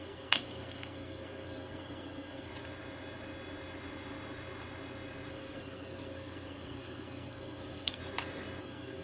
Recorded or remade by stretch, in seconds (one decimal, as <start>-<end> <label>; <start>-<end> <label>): 0.0-2.5 remade; 2.5-5.3 recorded; 5.3-8.0 remade; 8.0-8.6 recorded; 8.6-9.0 remade